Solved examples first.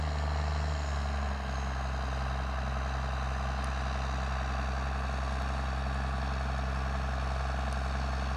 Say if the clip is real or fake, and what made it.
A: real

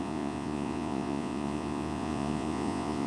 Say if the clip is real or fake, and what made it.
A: fake, vocoder, Vocos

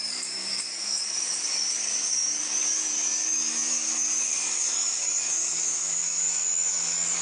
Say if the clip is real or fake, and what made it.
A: fake, codec, DAC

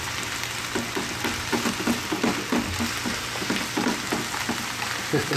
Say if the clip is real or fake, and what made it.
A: real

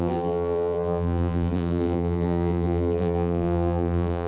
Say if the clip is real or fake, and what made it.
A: fake, vocoder, BigVGAN v2